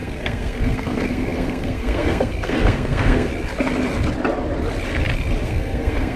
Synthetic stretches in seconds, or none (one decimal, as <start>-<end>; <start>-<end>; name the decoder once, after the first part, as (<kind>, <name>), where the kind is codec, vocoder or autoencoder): 0.0-3.3 (codec, SNAC); 5.4-6.2